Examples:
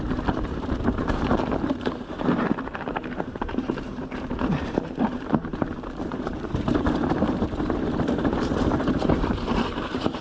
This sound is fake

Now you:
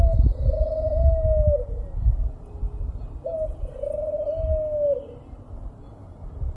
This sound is real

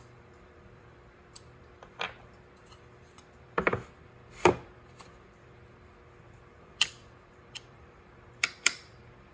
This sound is fake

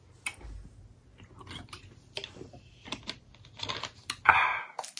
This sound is real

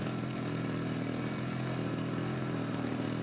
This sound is fake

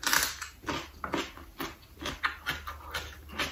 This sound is real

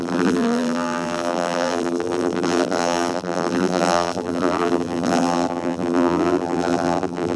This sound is fake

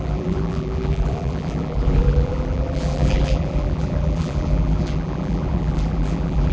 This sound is fake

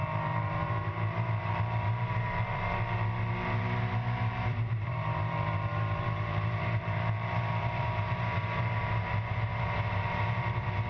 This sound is fake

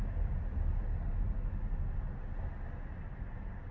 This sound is real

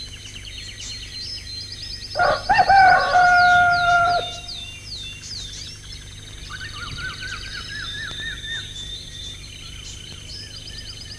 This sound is real